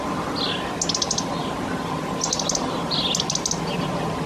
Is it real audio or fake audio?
real